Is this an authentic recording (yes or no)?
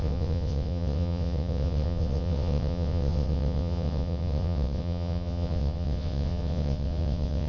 no